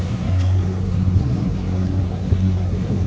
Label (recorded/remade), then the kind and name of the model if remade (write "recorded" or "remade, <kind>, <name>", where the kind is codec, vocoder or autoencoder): remade, codec, SNAC